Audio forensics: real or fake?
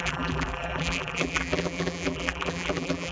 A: fake